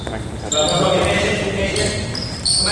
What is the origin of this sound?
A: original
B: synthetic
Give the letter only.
A